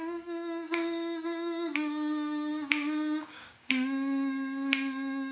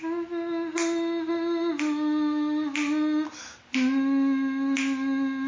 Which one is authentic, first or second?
second